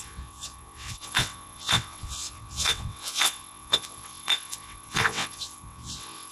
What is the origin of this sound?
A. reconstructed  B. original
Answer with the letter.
A